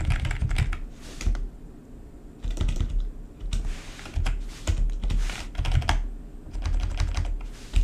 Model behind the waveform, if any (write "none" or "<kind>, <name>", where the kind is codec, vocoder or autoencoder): none